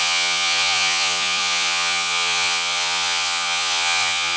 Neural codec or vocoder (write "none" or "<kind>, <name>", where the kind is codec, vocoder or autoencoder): vocoder, Vocos